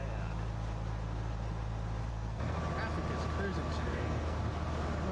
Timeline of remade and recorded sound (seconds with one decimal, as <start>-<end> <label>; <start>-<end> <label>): 0.0-2.1 recorded; 2.1-2.6 remade; 2.6-3.9 recorded; 3.9-4.4 remade; 4.4-5.1 recorded